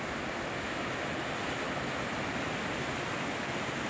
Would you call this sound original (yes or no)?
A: yes